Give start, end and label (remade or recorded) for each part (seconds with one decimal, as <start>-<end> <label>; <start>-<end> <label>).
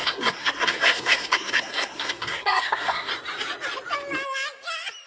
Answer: 0.0-3.1 remade; 3.1-5.1 recorded